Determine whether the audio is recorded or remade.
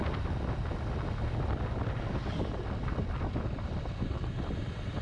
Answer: recorded